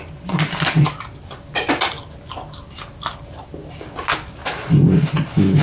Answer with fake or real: real